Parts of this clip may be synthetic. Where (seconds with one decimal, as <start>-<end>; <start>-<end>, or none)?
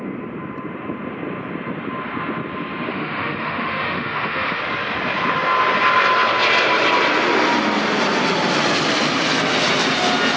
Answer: 2.9-4.6